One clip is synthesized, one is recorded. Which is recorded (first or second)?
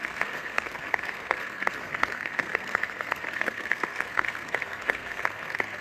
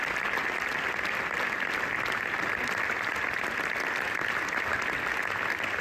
second